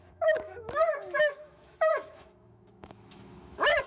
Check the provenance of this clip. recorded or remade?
remade